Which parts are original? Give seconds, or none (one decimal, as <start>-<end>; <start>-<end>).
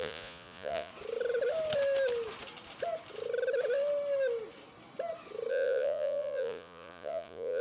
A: 0.9-5.5